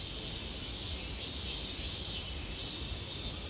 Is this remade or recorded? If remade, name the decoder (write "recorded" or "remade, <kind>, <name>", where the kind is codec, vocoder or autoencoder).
recorded